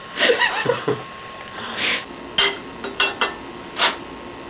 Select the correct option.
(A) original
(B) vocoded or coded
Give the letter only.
A